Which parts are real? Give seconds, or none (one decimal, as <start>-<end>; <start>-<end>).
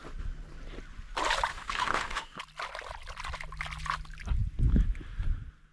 0.0-1.5; 2.4-5.7